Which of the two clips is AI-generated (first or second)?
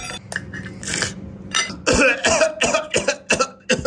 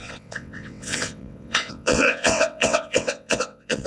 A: second